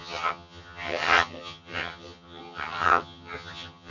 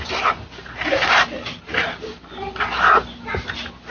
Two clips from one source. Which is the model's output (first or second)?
first